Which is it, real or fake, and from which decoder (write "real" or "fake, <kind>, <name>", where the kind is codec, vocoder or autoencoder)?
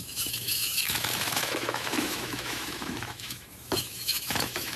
fake, autoencoder, DAC-VAE